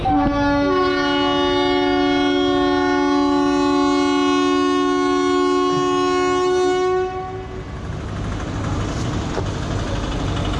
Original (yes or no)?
yes